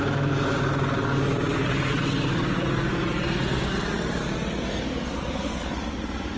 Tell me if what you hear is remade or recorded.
recorded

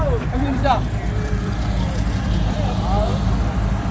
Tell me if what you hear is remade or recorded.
recorded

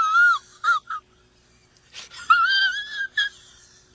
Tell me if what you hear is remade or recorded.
recorded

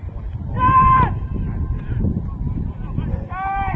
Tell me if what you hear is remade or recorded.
recorded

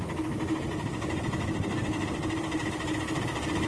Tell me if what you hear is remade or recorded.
recorded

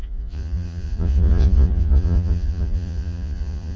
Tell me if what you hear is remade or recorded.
remade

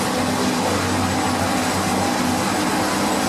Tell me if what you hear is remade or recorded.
recorded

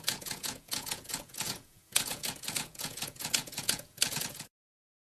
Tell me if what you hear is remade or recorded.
remade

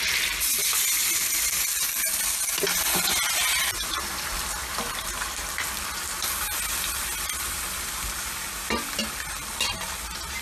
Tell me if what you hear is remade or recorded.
recorded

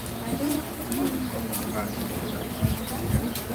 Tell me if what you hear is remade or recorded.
recorded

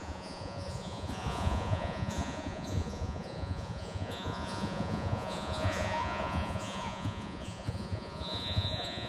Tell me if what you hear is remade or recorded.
remade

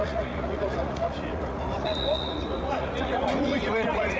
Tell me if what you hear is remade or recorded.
remade